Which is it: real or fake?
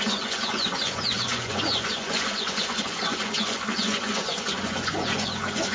fake